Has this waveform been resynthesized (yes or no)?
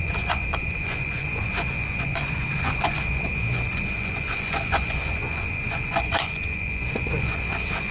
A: yes